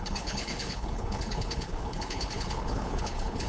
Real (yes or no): no